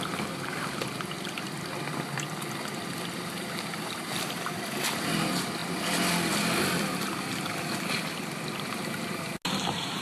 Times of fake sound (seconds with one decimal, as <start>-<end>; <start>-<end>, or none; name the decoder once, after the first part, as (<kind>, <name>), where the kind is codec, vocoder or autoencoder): 5.6-6.7 (vocoder, BigVGAN v2)